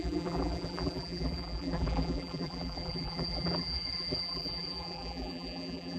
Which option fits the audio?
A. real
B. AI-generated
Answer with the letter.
B